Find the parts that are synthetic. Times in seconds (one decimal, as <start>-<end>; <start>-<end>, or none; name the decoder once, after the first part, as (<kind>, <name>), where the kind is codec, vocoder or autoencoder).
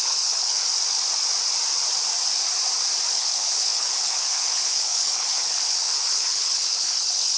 0.0-0.6 (codec, HILCodec); 3.1-7.4